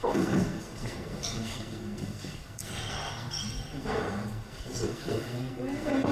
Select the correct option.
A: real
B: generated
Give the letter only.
B